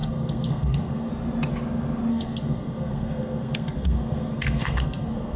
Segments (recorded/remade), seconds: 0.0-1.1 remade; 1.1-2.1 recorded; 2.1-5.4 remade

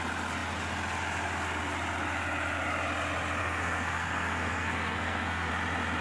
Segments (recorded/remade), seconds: 0.0-3.4 recorded; 3.4-5.5 remade; 5.5-6.0 recorded